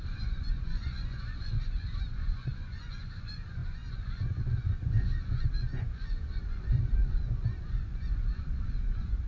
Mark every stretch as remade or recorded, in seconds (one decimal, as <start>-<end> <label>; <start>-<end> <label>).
0.0-9.3 remade